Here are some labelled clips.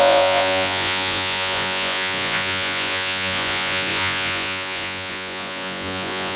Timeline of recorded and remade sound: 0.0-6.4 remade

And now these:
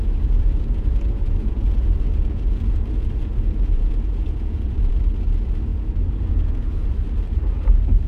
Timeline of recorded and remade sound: 0.0-4.9 remade; 4.9-5.7 recorded; 5.7-6.9 remade; 6.9-8.1 recorded

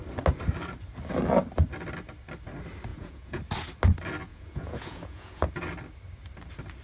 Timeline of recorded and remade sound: 0.0-2.9 recorded; 2.9-3.4 remade; 3.4-4.3 recorded; 4.3-5.4 remade; 5.4-6.8 recorded

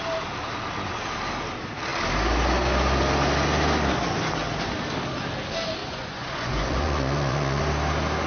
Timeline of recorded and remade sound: 0.0-5.8 recorded; 5.8-7.6 remade; 7.6-8.3 recorded

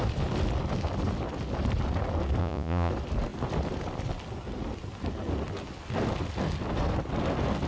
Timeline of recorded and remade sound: 0.0-2.4 recorded; 2.4-2.9 remade; 2.9-7.7 recorded